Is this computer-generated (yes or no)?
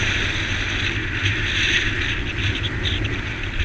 no